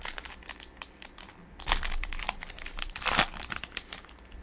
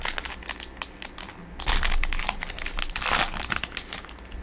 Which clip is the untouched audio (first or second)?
second